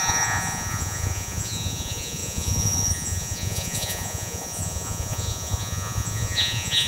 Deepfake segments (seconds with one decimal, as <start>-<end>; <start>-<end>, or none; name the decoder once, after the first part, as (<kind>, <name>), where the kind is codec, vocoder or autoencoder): 0.0-6.9 (vocoder, Vocos)